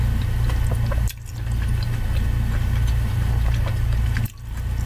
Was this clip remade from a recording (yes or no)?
no